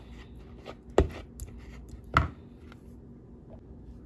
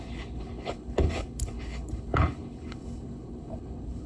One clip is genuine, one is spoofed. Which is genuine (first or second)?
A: first